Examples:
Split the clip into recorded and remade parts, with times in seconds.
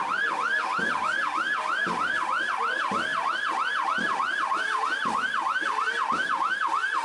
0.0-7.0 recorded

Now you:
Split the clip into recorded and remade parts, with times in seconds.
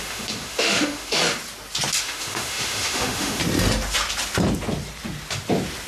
0.0-1.2 remade; 1.2-2.0 recorded; 2.0-3.4 remade; 3.4-5.9 recorded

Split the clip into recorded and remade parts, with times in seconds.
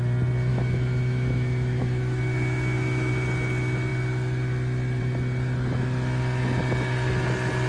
0.0-0.5 recorded; 0.5-3.1 remade; 3.1-7.7 recorded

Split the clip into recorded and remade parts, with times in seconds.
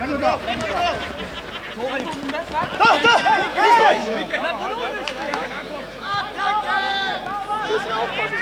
0.0-3.5 recorded; 3.5-6.2 remade; 6.2-8.4 recorded